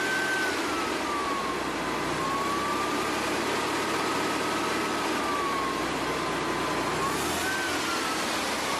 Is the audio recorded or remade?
recorded